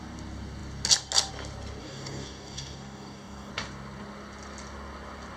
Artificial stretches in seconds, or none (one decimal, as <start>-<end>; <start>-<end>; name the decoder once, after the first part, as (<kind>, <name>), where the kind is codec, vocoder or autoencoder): 1.8-3.5 (codec, DAC)